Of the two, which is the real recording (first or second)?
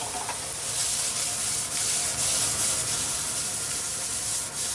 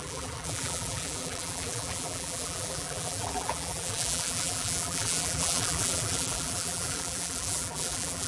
first